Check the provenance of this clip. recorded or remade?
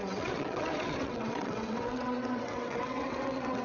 remade